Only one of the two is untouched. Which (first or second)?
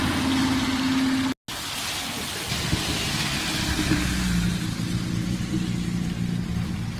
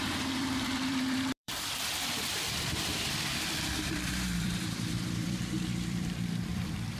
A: first